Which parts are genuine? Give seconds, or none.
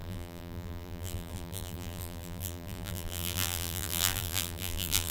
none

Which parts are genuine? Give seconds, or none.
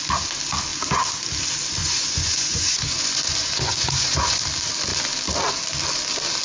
0.0-1.8; 4.4-6.4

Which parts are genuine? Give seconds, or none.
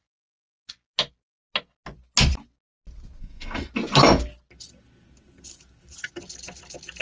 0.0-3.2; 3.7-7.0